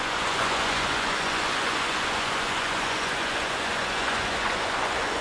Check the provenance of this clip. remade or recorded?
remade